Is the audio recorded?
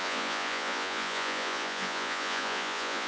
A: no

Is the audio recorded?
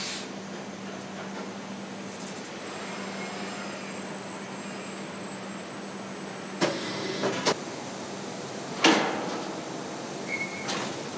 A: yes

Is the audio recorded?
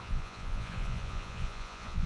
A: no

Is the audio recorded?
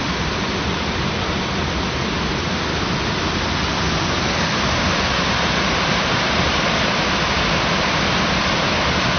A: yes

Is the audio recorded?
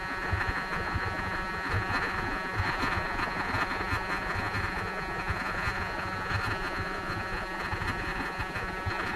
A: no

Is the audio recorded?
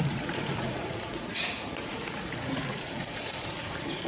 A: no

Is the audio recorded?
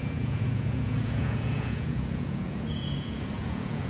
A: no